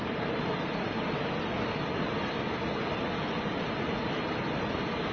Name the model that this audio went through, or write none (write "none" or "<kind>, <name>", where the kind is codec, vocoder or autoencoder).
none